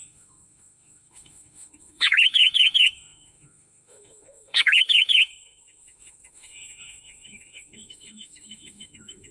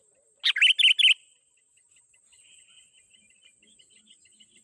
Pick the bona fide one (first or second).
second